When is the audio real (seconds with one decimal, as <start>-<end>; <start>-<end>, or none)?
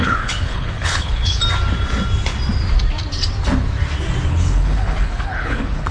1.4-4.3